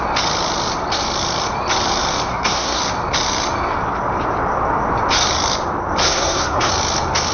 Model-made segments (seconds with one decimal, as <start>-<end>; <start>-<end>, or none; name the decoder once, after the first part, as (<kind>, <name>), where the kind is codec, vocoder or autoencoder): 2.3-2.8 (codec, SNAC); 6.0-6.7